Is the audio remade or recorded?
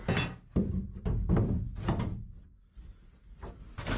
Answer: recorded